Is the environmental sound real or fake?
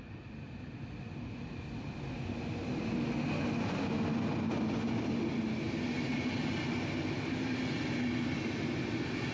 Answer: real